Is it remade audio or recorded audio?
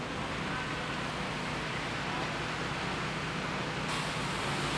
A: recorded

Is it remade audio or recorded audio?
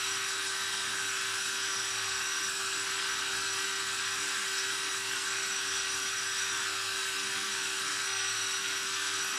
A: remade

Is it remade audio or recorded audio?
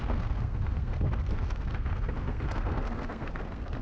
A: remade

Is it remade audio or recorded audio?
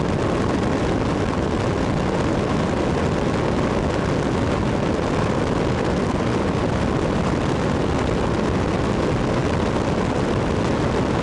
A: recorded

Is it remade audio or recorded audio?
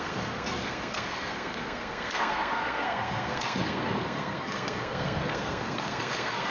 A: remade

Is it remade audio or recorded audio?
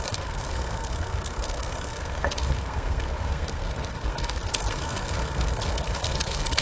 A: remade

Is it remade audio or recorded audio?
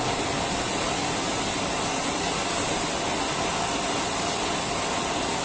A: recorded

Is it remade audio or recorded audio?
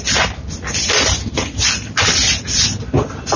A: recorded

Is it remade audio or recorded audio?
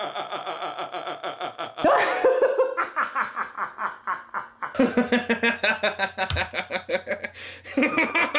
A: recorded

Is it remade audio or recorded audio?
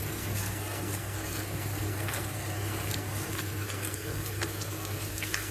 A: remade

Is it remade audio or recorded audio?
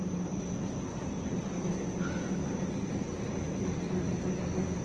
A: recorded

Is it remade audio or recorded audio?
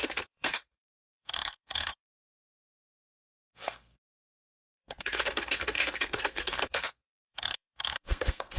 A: remade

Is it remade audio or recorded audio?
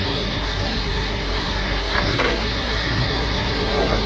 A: remade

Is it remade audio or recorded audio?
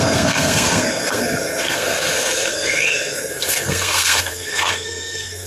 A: remade